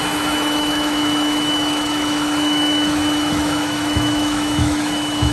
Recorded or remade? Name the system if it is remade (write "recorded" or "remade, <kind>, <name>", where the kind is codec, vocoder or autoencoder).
remade, autoencoder, DAC-VAE